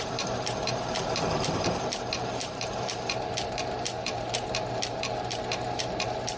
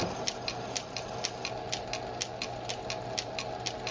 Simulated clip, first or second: first